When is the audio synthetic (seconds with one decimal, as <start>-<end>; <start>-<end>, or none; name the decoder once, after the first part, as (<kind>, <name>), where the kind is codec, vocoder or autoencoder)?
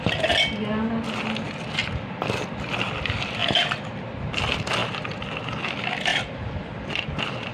1.8-2.4 (vocoder, BigVGAN v2); 4.8-5.6; 6.1-7.5